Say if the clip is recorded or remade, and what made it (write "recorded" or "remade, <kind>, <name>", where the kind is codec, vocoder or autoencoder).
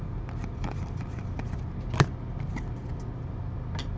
recorded